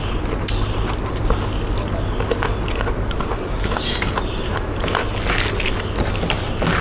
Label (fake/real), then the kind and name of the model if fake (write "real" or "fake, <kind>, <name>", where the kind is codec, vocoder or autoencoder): real